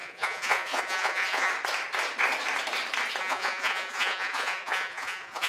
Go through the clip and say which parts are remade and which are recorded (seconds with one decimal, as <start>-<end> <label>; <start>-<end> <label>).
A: 0.0-1.5 remade; 1.5-3.2 recorded; 3.2-5.5 remade